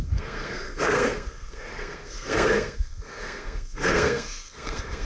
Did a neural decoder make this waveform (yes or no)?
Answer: yes